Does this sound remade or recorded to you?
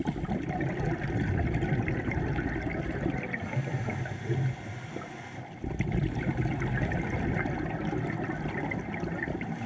recorded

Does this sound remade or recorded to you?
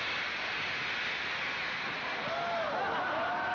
recorded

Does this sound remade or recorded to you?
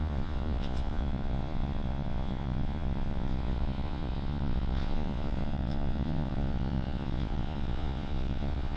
remade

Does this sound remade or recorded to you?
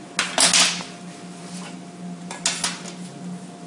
recorded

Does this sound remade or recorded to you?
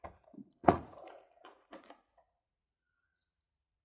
remade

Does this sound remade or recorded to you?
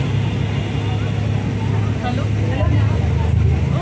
recorded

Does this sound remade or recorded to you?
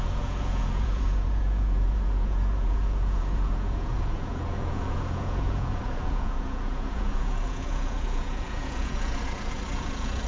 remade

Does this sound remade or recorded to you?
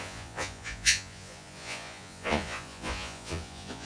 remade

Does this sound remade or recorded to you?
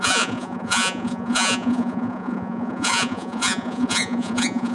remade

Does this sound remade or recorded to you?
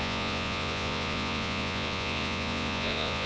remade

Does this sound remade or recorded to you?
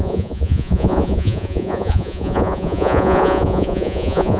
remade